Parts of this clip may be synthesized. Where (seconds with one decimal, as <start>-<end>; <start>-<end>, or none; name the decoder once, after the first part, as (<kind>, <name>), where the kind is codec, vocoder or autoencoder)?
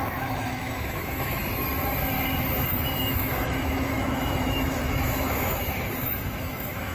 0.0-1.4 (autoencoder, DAC-VAE); 2.7-6.9